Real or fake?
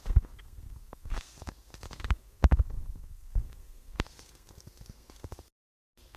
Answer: fake